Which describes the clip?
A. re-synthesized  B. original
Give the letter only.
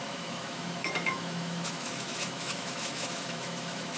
A